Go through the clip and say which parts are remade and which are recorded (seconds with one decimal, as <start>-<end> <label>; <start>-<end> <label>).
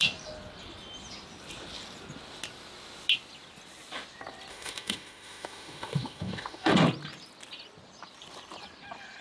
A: 0.0-4.5 recorded; 4.5-6.7 remade; 6.7-9.2 recorded